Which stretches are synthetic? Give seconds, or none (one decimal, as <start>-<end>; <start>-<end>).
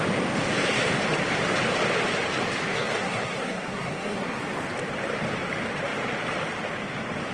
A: 2.7-4.4